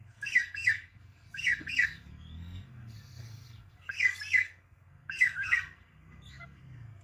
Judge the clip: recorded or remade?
remade